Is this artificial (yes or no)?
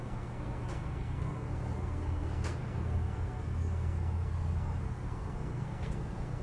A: yes